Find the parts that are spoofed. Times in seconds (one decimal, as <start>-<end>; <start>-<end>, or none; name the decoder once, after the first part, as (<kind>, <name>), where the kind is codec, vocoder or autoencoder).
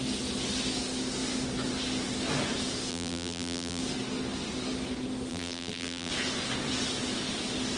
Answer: 2.9-3.8 (vocoder, BigVGAN v2); 5.3-6.1